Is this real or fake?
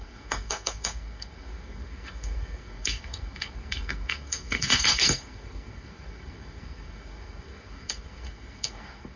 fake